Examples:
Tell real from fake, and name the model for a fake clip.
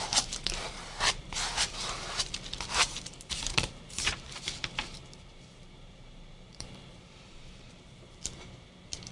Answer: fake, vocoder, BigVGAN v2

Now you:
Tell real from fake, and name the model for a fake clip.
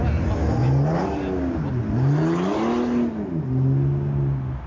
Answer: real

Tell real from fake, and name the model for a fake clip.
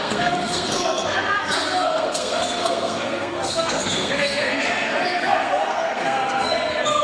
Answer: fake, codec, SNAC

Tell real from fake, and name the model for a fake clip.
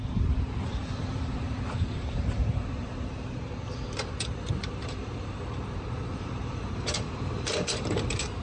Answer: fake, vocoder, BigVGAN v2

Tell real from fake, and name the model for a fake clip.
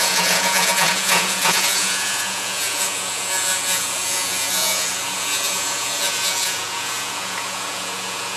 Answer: fake, vocoder, Vocos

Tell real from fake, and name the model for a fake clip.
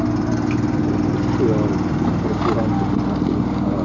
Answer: real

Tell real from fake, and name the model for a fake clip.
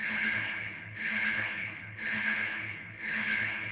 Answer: fake, codec, HILCodec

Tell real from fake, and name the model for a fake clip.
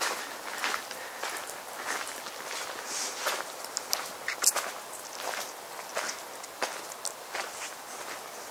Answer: real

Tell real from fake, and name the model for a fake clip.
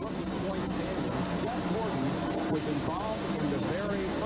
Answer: real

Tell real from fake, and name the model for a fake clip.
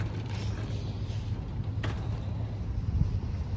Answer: real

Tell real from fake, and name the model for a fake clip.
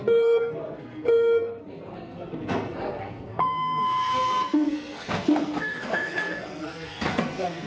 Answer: fake, codec, SNAC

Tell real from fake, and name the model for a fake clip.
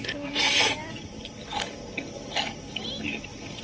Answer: real